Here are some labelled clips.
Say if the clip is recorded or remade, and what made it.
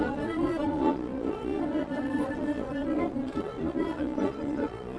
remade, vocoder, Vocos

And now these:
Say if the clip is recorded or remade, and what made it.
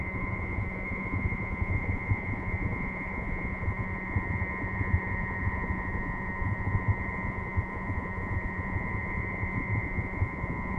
remade, vocoder, Vocos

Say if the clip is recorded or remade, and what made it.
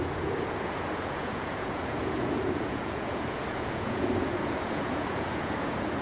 remade, vocoder, Vocos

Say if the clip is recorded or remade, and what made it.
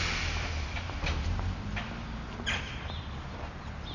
recorded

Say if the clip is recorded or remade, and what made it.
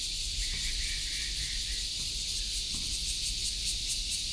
recorded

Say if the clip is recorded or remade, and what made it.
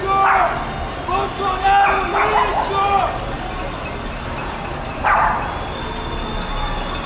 recorded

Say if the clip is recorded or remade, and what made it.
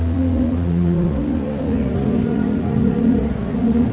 remade, vocoder, Vocos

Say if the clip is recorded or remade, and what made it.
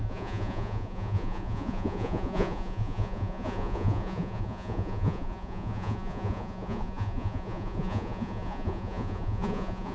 remade, vocoder, Vocos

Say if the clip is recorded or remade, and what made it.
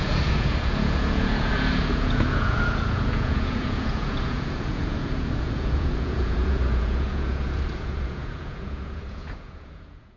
remade, vocoder, Vocos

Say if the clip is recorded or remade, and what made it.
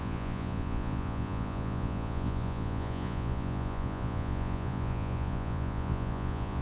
remade, vocoder, Vocos